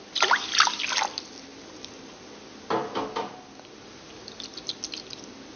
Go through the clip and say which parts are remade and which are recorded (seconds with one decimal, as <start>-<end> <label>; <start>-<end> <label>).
0.0-5.6 recorded